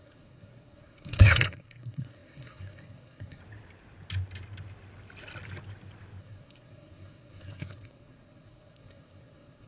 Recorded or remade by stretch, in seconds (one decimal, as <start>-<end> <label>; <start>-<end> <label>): 0.0-3.4 remade; 3.4-6.2 recorded; 6.2-9.7 remade